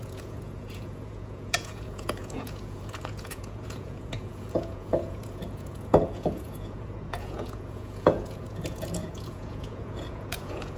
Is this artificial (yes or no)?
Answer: yes